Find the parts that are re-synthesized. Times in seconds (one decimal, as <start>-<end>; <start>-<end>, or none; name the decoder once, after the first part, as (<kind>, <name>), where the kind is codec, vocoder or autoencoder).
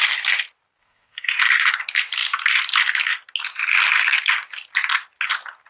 0.8-1.4 (codec, SNAC)